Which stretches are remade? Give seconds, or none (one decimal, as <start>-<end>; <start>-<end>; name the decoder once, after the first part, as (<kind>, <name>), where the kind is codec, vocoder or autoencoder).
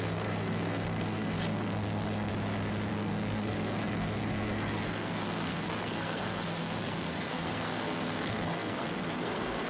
0.0-2.3 (codec, SNAC); 2.9-9.7